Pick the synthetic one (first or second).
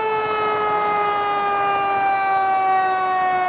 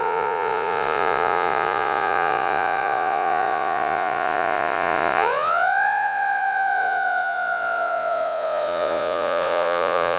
second